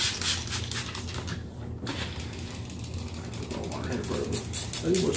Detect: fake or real real